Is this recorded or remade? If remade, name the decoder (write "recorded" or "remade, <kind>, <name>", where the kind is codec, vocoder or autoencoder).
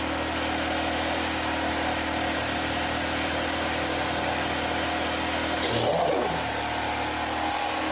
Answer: recorded